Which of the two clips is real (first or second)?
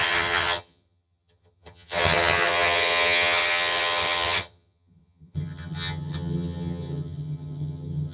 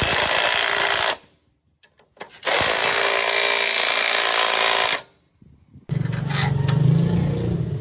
second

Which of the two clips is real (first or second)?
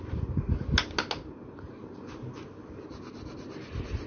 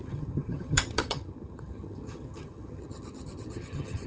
first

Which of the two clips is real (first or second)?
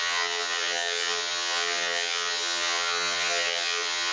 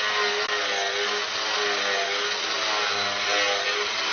second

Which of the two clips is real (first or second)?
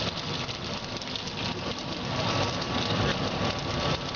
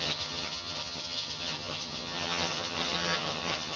first